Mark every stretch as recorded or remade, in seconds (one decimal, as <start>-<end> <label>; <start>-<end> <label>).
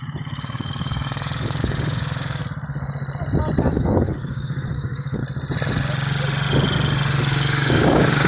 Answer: 0.0-2.4 remade; 2.4-3.6 recorded; 3.6-5.2 remade; 5.2-7.3 recorded; 7.3-8.3 remade